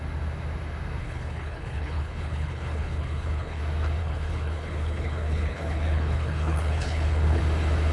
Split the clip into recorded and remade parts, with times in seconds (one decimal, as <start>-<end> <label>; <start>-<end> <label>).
0.0-1.0 recorded; 1.0-3.6 remade; 3.6-4.0 recorded; 4.0-7.4 remade; 7.4-7.9 recorded